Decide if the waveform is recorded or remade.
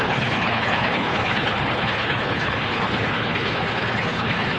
remade